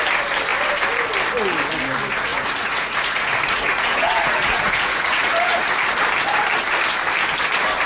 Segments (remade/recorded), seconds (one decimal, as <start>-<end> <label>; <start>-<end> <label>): 0.0-2.3 recorded; 2.3-5.9 remade; 5.9-7.9 recorded